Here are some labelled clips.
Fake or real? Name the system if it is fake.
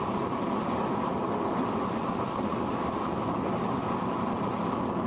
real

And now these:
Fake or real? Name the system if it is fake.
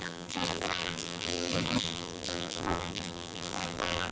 fake, vocoder, BigVGAN v2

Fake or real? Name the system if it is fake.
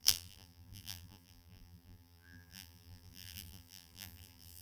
fake, vocoder, BigVGAN v2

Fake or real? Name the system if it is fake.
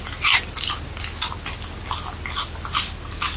real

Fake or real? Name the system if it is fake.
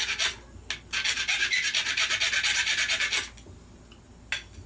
real